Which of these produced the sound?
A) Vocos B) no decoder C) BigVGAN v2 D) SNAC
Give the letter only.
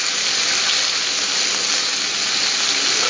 B